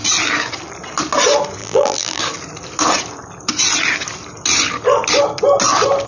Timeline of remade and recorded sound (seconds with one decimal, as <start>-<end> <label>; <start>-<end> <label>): 0.0-1.6 recorded; 1.6-2.2 remade; 2.2-6.1 recorded

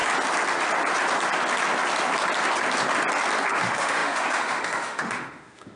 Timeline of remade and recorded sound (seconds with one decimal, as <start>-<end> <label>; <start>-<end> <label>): 0.0-3.5 recorded; 3.5-5.8 remade

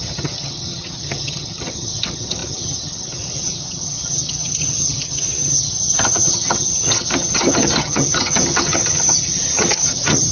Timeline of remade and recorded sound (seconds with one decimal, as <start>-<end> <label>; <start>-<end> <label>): 0.0-10.3 remade

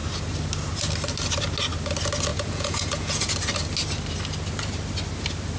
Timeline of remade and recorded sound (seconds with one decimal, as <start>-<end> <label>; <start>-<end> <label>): 0.0-2.3 recorded; 2.3-3.2 remade; 3.2-5.6 recorded

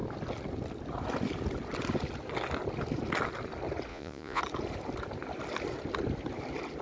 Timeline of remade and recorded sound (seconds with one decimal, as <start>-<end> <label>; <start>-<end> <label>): 0.0-3.9 recorded; 3.9-4.4 remade; 4.4-6.8 recorded

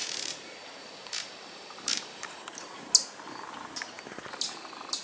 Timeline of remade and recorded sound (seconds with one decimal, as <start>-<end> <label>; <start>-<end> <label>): 0.0-2.9 remade; 2.9-5.0 recorded